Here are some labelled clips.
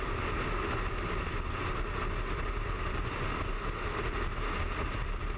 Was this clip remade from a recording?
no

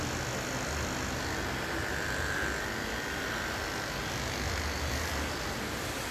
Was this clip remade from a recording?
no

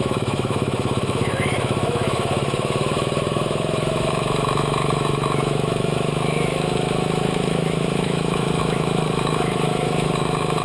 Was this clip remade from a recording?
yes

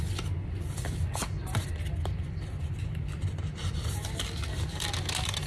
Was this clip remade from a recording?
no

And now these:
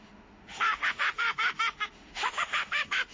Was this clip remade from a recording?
yes